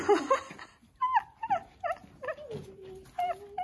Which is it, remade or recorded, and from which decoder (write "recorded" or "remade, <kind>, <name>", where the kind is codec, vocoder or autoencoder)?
recorded